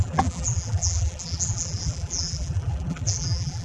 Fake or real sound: fake